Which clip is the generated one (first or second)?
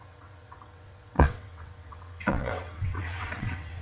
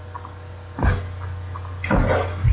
first